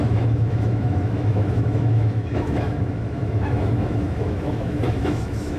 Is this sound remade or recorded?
remade